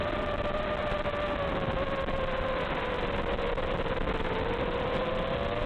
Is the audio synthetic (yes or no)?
no